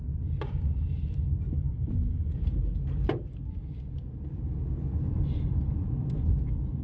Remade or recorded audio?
recorded